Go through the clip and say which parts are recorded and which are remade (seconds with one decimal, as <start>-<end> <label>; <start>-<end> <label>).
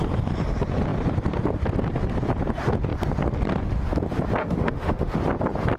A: 0.0-4.4 recorded; 4.4-5.1 remade; 5.1-5.8 recorded